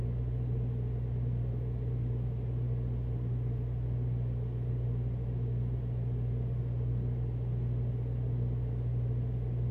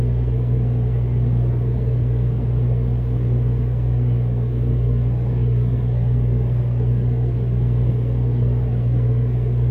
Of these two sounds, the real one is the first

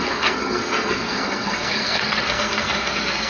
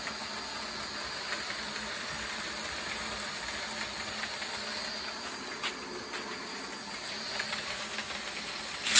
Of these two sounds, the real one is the second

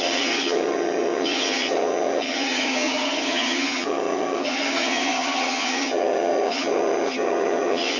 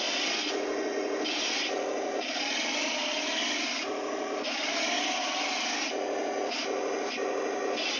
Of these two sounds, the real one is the second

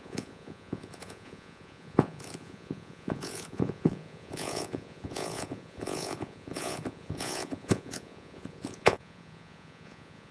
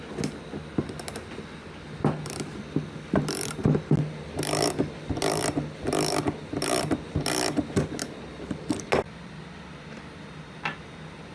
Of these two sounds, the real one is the second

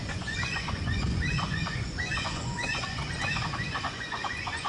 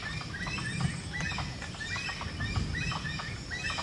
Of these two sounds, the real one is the second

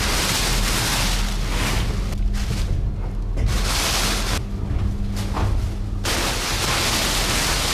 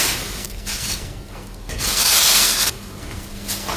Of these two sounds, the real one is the first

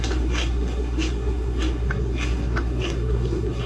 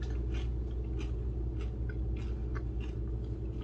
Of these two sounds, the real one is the second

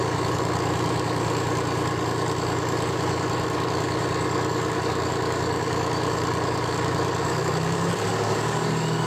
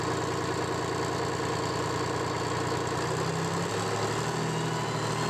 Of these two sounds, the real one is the second